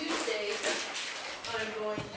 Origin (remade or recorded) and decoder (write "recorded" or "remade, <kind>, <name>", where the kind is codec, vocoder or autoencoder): recorded